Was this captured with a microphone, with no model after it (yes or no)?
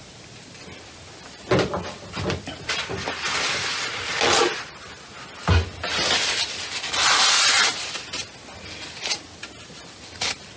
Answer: yes